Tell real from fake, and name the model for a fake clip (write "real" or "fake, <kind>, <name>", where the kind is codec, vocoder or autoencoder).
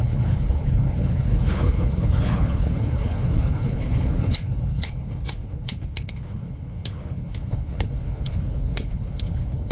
fake, codec, HILCodec